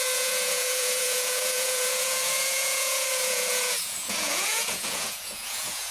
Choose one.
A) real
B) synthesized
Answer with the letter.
B